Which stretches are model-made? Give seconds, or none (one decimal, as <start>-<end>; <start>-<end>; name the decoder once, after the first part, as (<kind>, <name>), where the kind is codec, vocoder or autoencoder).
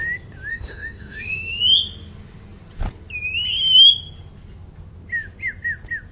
0.5-1.6 (autoencoder, DAC-VAE)